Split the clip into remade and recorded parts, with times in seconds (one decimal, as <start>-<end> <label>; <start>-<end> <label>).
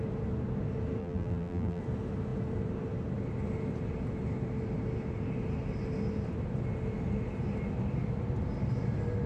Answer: 0.0-1.0 recorded; 1.0-1.8 remade; 1.8-9.3 recorded